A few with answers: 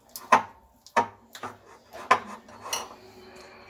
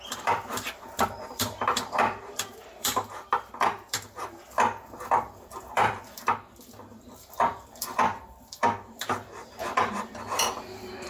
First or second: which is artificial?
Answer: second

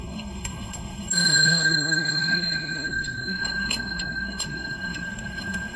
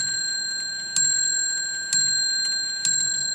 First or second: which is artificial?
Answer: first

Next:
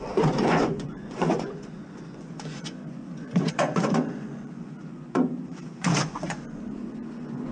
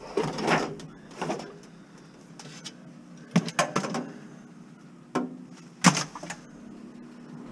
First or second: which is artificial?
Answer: first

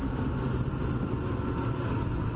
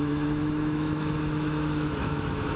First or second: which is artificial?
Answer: second